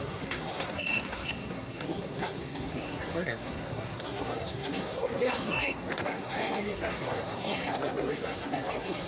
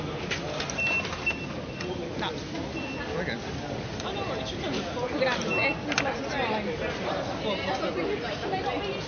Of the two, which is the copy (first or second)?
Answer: first